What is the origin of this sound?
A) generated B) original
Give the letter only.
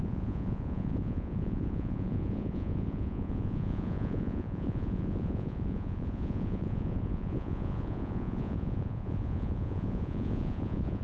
A